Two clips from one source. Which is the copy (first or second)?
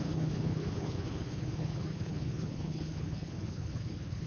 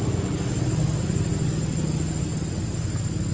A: first